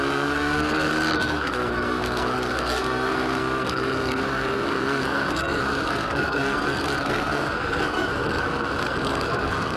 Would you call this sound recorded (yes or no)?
no